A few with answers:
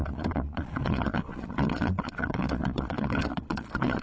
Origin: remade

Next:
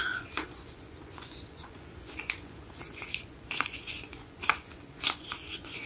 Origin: remade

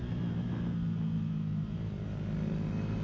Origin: recorded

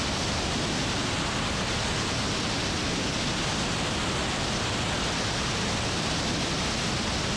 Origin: recorded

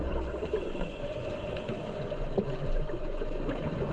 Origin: remade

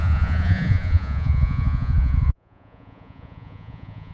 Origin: remade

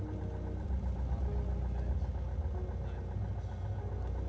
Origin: recorded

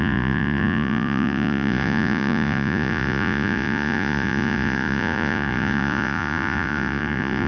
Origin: remade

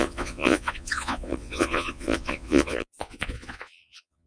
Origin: remade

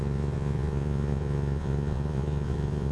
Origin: remade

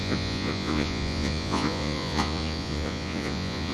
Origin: remade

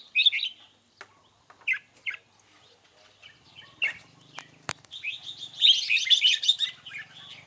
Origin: recorded